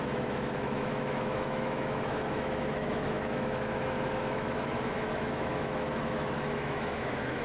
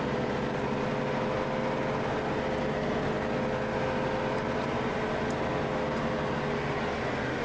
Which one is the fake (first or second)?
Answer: first